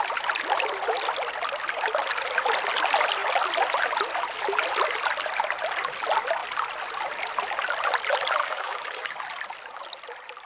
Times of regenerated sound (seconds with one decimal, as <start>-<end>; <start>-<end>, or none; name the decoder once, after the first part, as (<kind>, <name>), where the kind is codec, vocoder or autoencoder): 8.4-9.2 (codec, DAC)